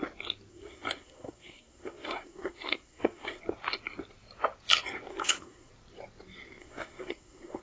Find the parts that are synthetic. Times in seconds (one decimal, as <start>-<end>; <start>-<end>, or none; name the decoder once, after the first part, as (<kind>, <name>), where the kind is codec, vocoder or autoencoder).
0.5-3.4 (codec, SNAC); 5.1-5.7; 6.6-7.6